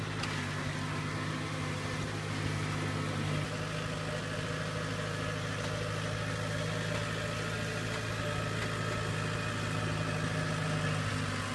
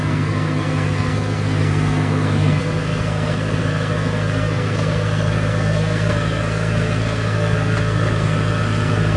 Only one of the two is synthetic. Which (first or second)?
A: second